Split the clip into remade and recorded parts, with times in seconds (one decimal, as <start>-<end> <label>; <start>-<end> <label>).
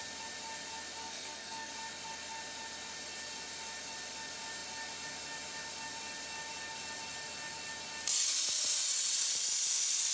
0.0-1.0 recorded; 1.0-1.7 remade; 1.7-10.1 recorded